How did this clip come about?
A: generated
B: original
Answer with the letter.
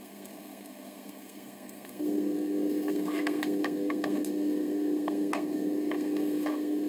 A